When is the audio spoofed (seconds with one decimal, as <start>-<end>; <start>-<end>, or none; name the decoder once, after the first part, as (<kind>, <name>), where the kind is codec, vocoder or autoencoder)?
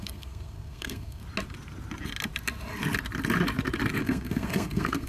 0.0-1.2 (codec, SNAC); 4.0-5.1